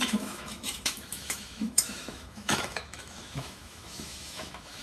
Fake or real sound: fake